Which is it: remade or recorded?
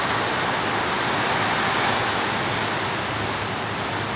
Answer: recorded